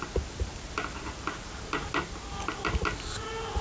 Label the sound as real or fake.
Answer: real